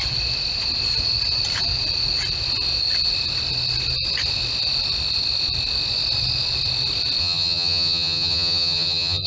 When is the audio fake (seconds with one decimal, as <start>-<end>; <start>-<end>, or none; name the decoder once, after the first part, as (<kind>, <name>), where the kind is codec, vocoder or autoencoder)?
7.2-9.3 (vocoder, HiFi-GAN)